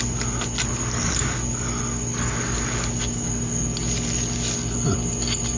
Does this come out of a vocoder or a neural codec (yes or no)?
no